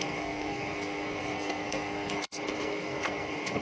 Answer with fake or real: fake